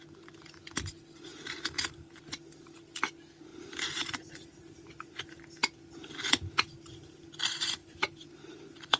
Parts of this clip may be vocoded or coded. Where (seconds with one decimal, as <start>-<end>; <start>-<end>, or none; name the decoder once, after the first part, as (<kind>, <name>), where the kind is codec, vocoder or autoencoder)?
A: 1.3-2.2 (vocoder, BigVGAN v2); 3.5-4.3; 7.8-8.3